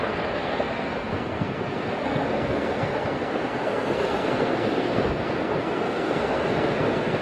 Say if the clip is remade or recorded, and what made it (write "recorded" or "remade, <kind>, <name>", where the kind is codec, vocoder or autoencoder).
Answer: remade, codec, SNAC